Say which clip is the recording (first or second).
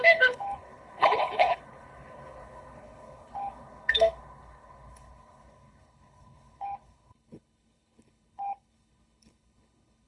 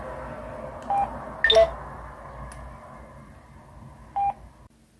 second